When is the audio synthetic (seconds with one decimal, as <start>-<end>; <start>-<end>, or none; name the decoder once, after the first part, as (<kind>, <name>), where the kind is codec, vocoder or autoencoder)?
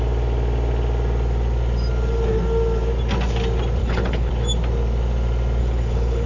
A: 3.8-4.3 (codec, HILCodec); 5.6-6.3